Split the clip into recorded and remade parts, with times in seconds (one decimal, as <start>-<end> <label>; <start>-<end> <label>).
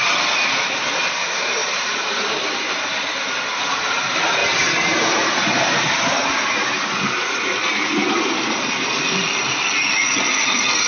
0.0-1.6 recorded; 1.6-3.3 remade; 3.3-4.4 recorded; 4.4-6.1 remade; 6.1-10.9 recorded